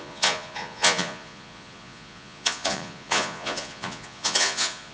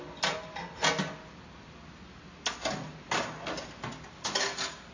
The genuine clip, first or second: second